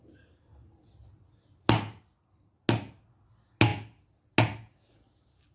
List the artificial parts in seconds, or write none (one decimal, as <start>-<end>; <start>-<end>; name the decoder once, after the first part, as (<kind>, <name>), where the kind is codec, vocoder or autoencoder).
none